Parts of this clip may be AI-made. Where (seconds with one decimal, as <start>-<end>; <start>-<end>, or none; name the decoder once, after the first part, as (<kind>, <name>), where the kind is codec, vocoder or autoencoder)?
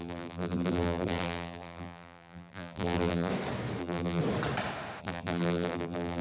0.0-3.3 (vocoder, BigVGAN v2); 3.8-4.2; 5.0-6.2